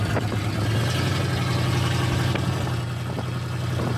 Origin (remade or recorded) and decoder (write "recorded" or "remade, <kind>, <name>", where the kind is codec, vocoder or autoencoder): recorded